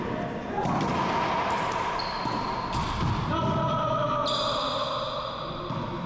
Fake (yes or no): no